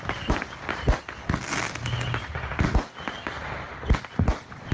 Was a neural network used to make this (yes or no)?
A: no